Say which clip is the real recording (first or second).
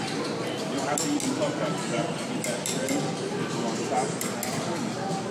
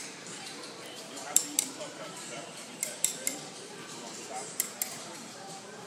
first